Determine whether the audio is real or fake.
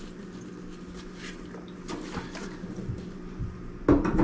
real